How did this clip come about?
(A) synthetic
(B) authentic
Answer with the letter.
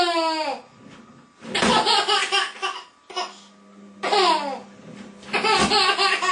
B